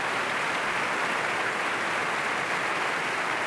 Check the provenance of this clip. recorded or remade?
recorded